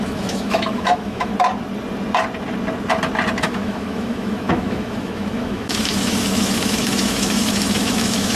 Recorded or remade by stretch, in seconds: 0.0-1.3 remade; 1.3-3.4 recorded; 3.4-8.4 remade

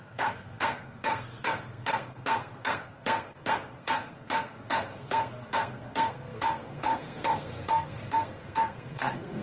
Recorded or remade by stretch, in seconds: 0.0-9.4 remade